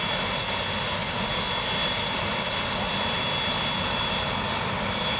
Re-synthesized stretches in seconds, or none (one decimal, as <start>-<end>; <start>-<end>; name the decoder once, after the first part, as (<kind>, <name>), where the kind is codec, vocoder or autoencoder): none